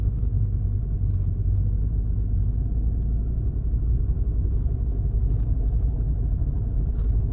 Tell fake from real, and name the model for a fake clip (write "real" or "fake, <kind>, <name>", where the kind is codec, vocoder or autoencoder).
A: real